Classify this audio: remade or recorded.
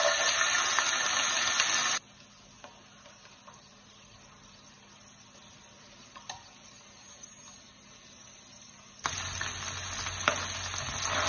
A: recorded